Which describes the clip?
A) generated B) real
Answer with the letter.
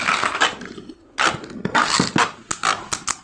B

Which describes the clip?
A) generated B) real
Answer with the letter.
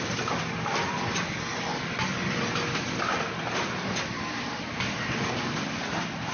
B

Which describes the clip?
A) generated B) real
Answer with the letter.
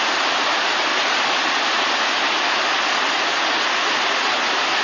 B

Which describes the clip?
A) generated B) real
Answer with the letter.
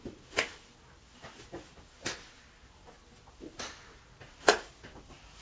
B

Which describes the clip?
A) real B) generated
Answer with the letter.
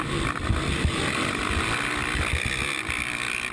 A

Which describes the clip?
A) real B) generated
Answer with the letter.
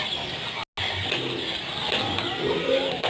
A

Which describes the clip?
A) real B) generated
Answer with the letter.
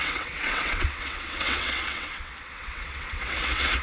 B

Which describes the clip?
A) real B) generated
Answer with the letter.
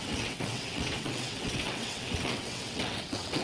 B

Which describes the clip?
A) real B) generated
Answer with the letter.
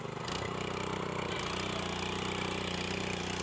A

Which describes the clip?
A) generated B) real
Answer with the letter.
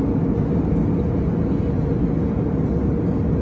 B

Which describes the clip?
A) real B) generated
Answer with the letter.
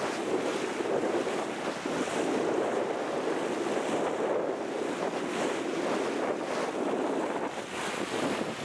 A